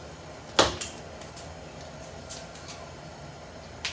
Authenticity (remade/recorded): recorded